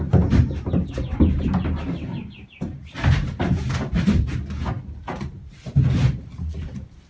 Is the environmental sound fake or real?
real